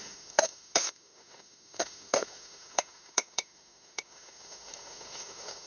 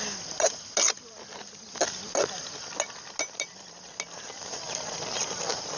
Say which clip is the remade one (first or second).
first